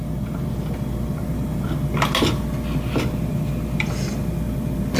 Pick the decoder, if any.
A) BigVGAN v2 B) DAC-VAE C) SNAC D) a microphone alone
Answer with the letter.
D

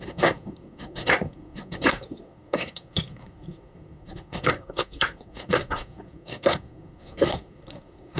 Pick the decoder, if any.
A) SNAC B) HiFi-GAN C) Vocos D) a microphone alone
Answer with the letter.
A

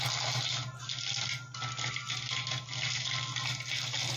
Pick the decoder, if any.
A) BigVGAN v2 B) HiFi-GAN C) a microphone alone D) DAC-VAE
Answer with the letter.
C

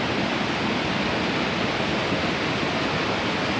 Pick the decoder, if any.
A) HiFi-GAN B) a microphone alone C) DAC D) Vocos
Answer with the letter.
B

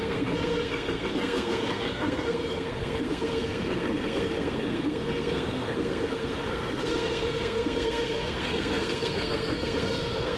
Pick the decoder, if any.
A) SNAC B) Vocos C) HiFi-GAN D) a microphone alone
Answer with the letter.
A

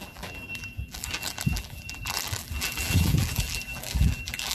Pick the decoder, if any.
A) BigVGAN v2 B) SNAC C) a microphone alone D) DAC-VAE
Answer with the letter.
A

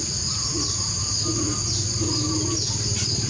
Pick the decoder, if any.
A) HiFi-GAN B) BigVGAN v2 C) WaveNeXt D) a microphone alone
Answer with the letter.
D